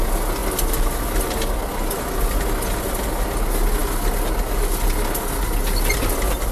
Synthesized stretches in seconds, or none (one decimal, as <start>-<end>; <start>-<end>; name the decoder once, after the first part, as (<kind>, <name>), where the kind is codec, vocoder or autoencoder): none